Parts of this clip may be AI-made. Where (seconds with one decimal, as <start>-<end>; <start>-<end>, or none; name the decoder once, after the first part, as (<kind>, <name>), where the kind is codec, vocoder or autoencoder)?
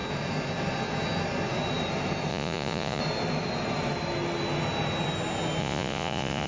2.3-3.0 (vocoder, Vocos); 5.6-6.5